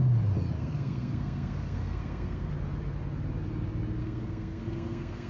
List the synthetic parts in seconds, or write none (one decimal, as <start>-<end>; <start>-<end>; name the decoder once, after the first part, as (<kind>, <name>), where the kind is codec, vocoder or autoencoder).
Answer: 0.6-2.5 (codec, SNAC); 4.0-5.3